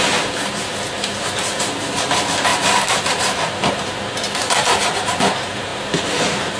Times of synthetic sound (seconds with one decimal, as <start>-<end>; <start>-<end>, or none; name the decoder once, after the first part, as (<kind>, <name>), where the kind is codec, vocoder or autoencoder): 2.5-3.7 (vocoder, BigVGAN v2)